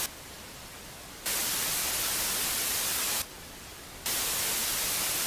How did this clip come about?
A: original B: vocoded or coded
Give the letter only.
A